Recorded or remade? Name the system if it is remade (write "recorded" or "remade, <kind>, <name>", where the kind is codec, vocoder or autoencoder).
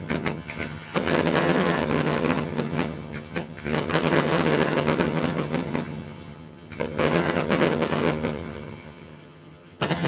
remade, vocoder, HiFi-GAN